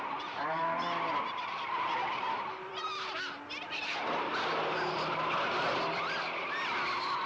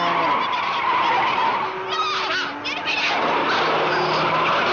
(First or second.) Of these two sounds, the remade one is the first